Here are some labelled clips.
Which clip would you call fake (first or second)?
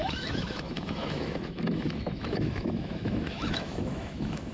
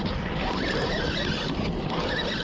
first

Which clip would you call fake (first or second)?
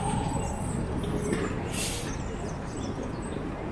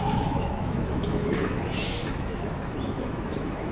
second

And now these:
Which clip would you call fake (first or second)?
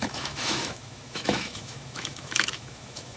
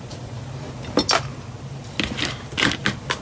first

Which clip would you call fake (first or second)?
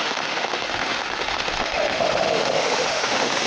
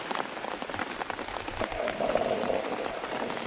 first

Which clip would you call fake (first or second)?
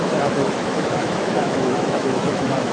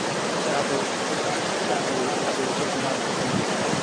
first